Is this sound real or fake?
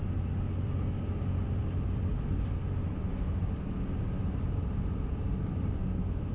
real